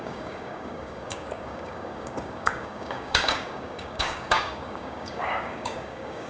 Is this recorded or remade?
remade